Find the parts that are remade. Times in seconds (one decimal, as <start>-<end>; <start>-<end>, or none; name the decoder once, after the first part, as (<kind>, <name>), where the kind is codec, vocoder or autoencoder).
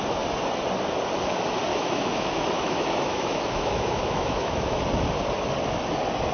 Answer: 1.7-4.8 (autoencoder, DAC-VAE)